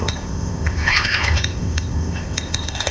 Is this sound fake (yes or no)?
yes